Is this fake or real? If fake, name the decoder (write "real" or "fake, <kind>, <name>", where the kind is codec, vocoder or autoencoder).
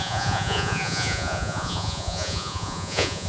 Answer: fake, vocoder, Vocos